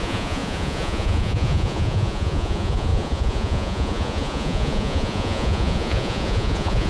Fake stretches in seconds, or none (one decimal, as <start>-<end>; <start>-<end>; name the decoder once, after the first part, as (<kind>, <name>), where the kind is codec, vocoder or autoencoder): 0.0-6.9 (vocoder, Vocos)